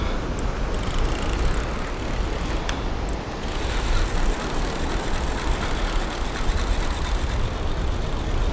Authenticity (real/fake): real